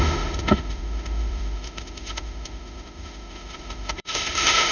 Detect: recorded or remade remade